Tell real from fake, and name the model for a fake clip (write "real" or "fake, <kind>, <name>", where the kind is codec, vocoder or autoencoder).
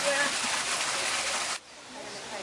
real